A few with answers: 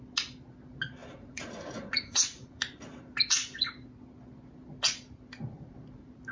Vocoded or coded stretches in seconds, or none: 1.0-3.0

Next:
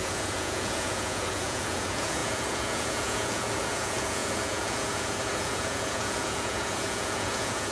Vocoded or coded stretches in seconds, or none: 0.0-7.7

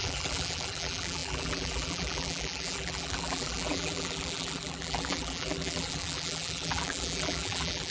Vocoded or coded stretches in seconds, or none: 0.0-7.9

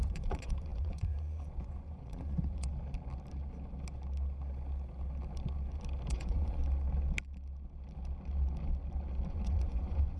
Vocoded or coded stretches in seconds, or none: 0.0-2.7; 6.1-6.6; 9.3-10.2

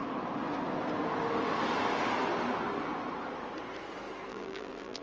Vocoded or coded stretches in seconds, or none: 4.3-5.0

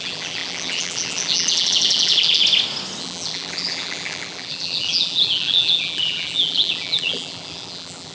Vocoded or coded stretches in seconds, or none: 0.0-2.4; 3.0-8.1

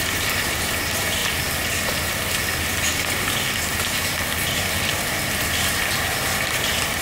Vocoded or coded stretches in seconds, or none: 0.0-1.2; 5.4-7.0